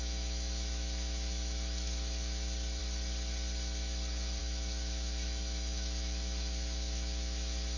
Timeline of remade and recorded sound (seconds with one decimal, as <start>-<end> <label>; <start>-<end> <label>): 0.0-2.8 remade; 2.8-4.4 recorded; 4.4-7.8 remade